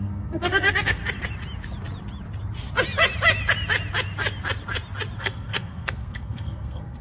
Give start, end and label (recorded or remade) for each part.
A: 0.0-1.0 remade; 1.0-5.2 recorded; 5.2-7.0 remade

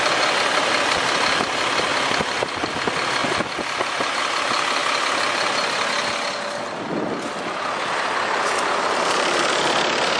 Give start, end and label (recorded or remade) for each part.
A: 0.0-10.2 recorded

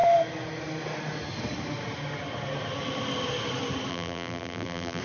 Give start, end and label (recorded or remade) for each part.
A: 0.0-3.9 recorded; 3.9-5.0 remade

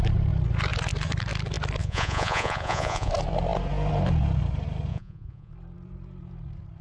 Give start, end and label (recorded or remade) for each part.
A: 0.0-1.8 recorded; 1.8-3.1 remade; 3.1-4.9 recorded; 4.9-5.5 remade; 5.5-6.8 recorded